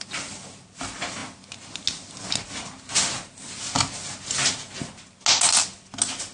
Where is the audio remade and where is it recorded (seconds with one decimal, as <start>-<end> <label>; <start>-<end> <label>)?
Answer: 0.0-6.3 recorded

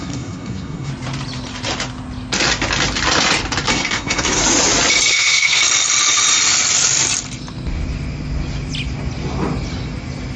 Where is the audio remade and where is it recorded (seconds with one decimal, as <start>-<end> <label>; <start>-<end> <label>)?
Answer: 0.0-0.9 remade; 0.9-3.7 recorded; 3.7-4.4 remade; 4.4-5.1 recorded; 5.1-5.6 remade; 5.6-10.4 recorded